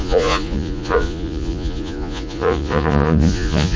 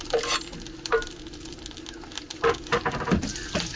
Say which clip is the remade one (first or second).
first